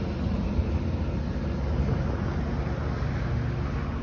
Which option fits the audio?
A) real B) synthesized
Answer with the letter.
A